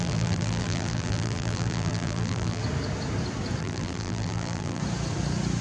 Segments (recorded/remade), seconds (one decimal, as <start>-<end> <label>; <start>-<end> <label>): 0.0-2.6 remade; 2.6-3.6 recorded; 3.6-4.8 remade; 4.8-5.6 recorded